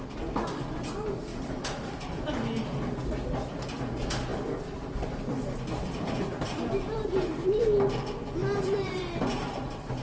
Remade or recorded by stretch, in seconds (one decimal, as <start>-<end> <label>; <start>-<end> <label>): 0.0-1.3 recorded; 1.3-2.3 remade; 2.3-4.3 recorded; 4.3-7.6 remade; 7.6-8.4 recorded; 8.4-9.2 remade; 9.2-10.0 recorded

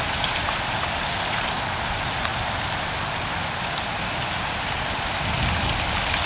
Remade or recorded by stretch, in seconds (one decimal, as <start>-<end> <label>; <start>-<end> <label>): 0.0-2.3 remade; 2.3-6.3 recorded

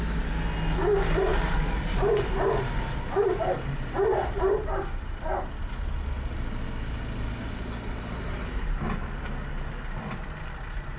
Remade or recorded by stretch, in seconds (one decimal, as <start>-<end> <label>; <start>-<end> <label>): 0.0-1.3 recorded; 1.3-4.5 remade; 4.5-11.0 recorded

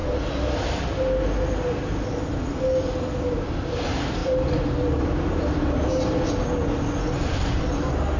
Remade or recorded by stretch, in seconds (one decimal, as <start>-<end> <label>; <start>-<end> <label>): 0.0-4.2 recorded; 4.2-4.7 remade; 4.7-8.2 recorded

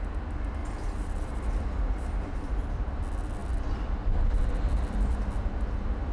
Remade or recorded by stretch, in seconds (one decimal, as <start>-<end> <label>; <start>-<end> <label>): 0.0-0.6 recorded; 0.6-3.0 remade; 3.0-6.1 recorded

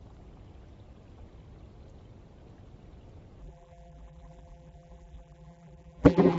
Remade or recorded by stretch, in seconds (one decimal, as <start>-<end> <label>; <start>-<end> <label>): 0.0-3.4 recorded; 3.4-6.4 remade

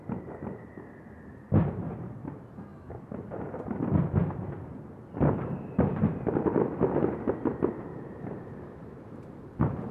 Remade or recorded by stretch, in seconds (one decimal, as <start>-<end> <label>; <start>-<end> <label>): 0.0-7.9 recorded; 7.9-9.9 remade